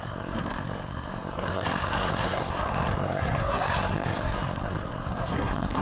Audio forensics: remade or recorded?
remade